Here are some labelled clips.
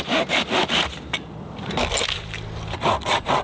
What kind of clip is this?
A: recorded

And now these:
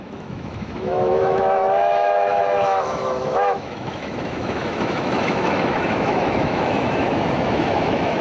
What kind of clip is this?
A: remade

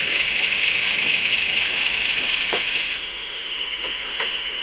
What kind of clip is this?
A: remade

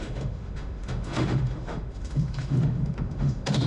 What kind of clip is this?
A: remade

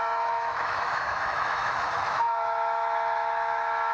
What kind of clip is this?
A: remade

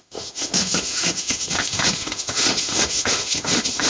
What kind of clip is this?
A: remade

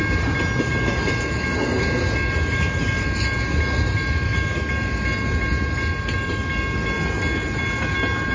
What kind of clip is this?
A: recorded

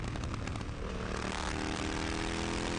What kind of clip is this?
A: recorded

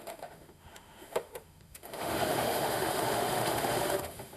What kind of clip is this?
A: remade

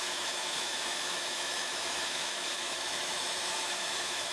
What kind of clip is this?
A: remade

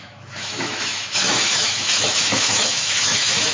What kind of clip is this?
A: remade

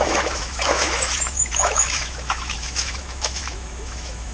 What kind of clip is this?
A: remade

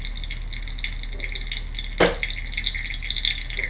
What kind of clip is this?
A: recorded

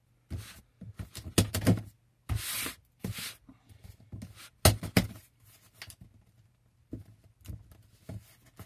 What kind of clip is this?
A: recorded